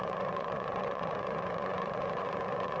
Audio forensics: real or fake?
fake